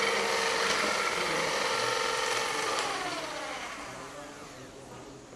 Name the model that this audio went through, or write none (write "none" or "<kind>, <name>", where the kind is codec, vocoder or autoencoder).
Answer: none